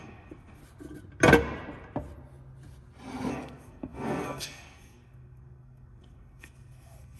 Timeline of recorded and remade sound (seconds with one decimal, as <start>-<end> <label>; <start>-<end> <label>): 0.0-0.6 remade; 0.6-3.3 recorded; 3.3-7.2 remade